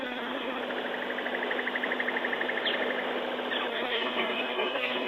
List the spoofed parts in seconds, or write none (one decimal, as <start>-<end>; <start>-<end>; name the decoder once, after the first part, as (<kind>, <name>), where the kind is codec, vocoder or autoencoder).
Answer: 0.0-0.6 (codec, SNAC); 3.7-5.1